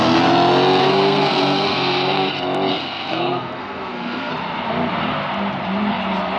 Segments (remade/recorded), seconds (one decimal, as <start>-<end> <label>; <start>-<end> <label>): 0.0-0.8 recorded; 0.8-2.3 remade; 2.3-2.7 recorded; 2.7-4.3 remade; 4.3-6.4 recorded